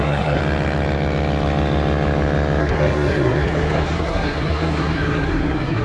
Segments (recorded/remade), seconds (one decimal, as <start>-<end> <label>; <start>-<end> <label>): 0.0-0.4 remade; 0.4-2.6 recorded; 2.6-5.8 remade